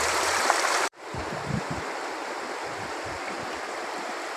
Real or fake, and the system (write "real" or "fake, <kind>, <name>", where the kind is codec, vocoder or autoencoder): fake, vocoder, BigVGAN v2